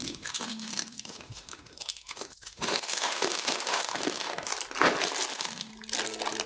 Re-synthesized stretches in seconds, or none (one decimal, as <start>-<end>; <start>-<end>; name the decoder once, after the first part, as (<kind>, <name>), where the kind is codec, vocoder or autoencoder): 0.0-4.5 (autoencoder, DAC-VAE); 5.3-5.7